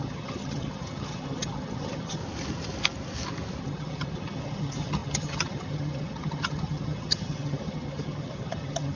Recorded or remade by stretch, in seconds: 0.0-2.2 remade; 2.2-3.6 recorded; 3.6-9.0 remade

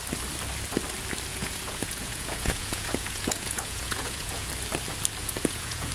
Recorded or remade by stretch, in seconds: 0.0-1.3 recorded; 1.3-4.5 remade; 4.5-5.2 recorded; 5.2-5.9 remade

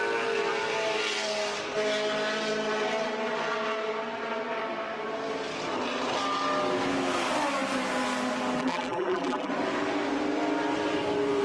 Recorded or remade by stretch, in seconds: 0.0-8.6 recorded; 8.6-9.5 remade; 9.5-11.4 recorded

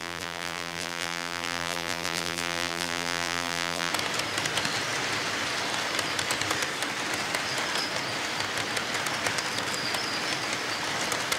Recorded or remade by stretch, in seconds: 0.0-3.9 remade; 3.9-11.4 recorded

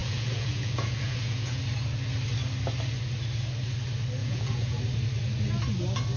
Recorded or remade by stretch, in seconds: 0.0-1.6 remade; 1.6-4.2 recorded; 4.2-4.8 remade; 4.8-6.2 recorded

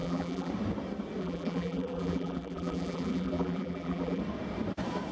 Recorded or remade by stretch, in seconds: 0.0-0.5 remade; 0.5-1.2 recorded; 1.2-4.2 remade; 4.2-5.1 recorded

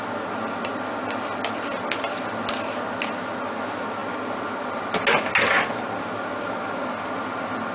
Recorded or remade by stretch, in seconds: 0.0-7.7 recorded

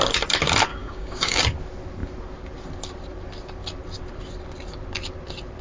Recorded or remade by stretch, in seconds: 0.0-0.7 recorded; 0.7-1.4 remade; 1.4-5.6 recorded